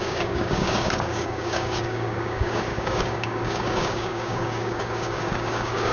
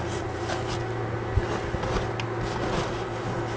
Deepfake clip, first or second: first